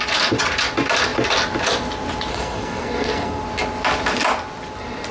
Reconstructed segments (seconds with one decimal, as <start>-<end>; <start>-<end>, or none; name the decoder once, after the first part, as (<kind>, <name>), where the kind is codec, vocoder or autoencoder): 2.3-3.4 (codec, SNAC)